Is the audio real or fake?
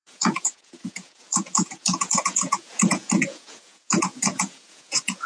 fake